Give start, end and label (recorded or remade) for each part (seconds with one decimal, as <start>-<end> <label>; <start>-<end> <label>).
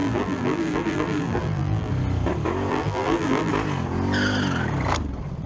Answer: 0.0-1.9 remade; 1.9-2.7 recorded; 2.7-3.5 remade; 3.5-5.5 recorded